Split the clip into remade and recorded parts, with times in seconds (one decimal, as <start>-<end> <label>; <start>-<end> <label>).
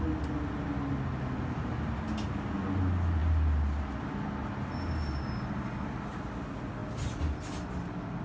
0.0-8.2 recorded